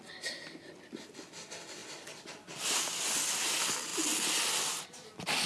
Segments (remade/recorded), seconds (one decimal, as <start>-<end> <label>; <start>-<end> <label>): 0.0-5.5 recorded